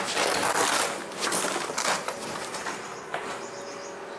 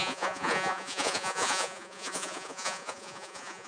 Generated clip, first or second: second